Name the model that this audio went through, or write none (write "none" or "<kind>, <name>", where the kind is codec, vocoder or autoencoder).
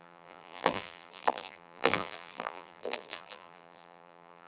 vocoder, BigVGAN v2